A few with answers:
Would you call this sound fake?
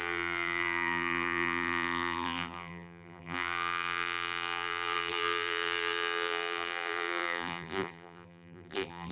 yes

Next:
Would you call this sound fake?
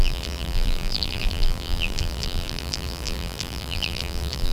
yes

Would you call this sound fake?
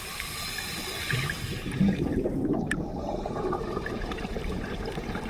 yes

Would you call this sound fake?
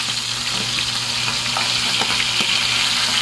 no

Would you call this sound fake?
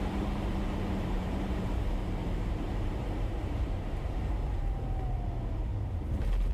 yes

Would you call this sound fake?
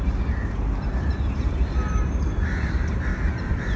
yes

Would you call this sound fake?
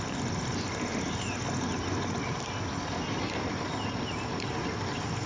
no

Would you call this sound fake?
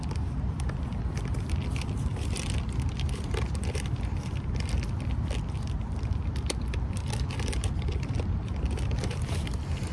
yes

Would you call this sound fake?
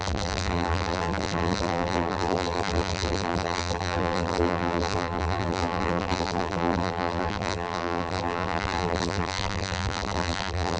yes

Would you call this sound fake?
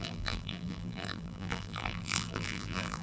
yes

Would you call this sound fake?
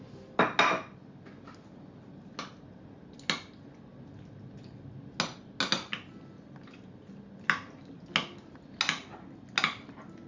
no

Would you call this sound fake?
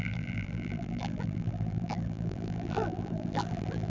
yes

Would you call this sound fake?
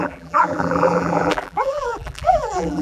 yes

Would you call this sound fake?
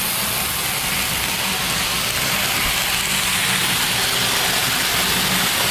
no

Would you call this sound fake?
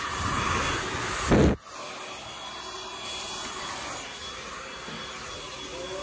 no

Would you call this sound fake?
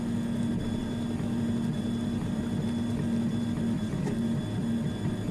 yes